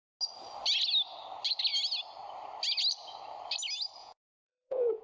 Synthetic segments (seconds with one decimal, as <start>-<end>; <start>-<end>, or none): 4.0-5.0